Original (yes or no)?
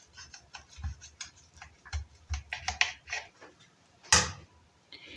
yes